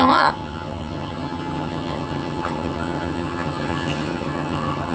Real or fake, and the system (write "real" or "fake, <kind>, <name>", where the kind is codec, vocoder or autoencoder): fake, vocoder, HiFi-GAN